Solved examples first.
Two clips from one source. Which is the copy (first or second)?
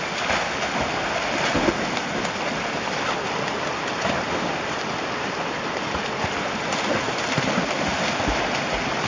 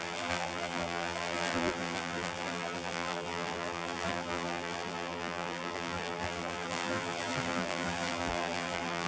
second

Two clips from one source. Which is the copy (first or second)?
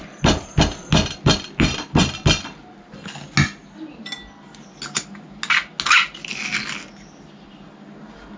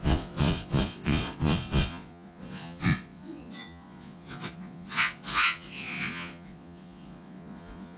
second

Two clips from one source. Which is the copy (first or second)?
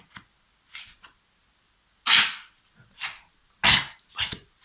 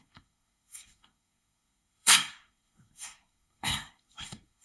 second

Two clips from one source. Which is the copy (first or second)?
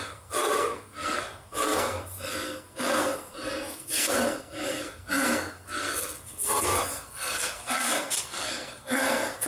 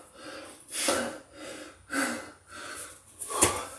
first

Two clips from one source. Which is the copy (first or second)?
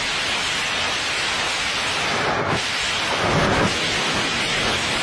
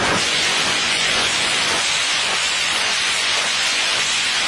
second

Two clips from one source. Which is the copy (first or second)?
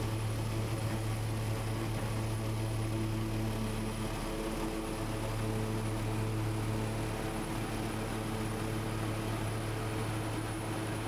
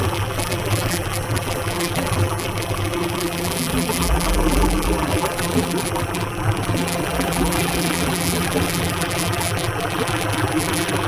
second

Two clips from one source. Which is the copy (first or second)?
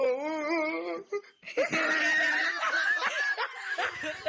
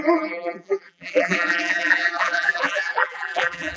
second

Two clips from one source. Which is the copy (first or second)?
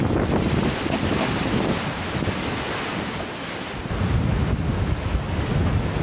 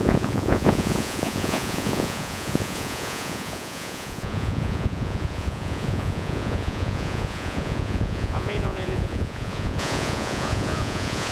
second